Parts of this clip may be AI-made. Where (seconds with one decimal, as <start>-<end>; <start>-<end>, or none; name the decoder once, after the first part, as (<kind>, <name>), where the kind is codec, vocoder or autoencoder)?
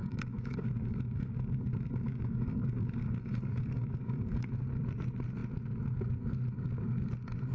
0.0-4.5 (codec, DAC)